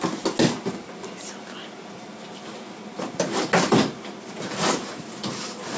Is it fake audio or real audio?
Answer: real